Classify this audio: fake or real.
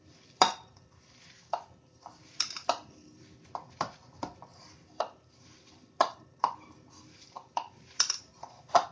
fake